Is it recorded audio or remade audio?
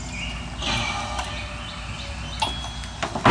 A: recorded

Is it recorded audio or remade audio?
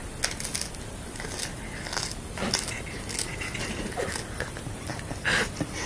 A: recorded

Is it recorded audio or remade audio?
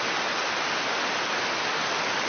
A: recorded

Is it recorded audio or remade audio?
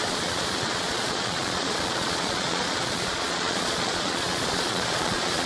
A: remade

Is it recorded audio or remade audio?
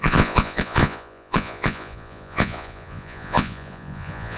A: remade